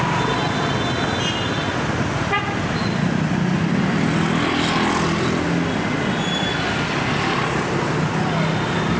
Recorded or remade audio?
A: recorded